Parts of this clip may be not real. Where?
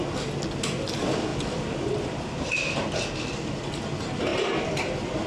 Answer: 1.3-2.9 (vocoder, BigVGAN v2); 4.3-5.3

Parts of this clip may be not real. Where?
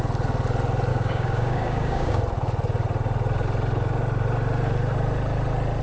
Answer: 0.9-2.2 (codec, DAC)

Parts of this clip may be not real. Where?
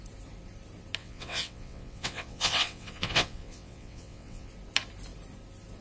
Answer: 1.0-4.5 (vocoder, WaveNeXt)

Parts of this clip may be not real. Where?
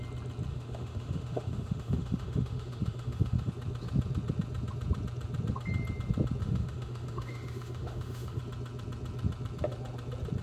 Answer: 0.5-3.5 (autoencoder, DAC-VAE); 6.4-8.4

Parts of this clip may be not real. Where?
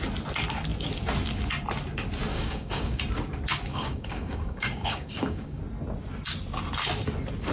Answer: 2.3-3.0 (codec, DAC); 3.7-5.6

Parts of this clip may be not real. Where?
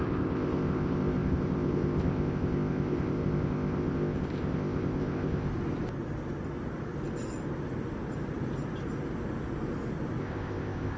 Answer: 0.0-5.5 (codec, ZipCodec); 10.2-11.0